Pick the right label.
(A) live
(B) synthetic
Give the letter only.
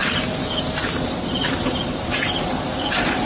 B